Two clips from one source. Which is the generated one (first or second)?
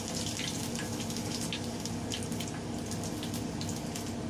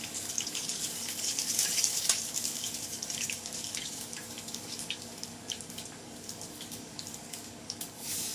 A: second